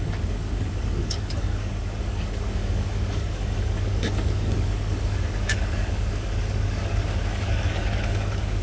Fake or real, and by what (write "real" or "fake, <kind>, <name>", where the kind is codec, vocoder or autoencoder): fake, codec, DAC